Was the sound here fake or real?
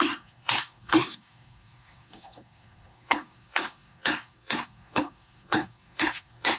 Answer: fake